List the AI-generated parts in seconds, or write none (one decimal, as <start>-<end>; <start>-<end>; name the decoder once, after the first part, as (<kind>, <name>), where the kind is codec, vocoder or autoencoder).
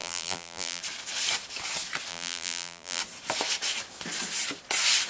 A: 0.0-0.8 (vocoder, BigVGAN v2); 2.1-3.0